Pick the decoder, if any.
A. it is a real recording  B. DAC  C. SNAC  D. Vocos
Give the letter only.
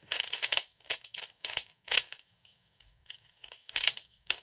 B